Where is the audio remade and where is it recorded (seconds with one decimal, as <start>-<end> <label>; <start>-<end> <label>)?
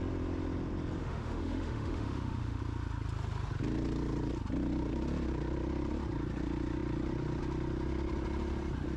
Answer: 0.0-1.0 recorded; 1.0-2.6 remade; 2.6-9.0 recorded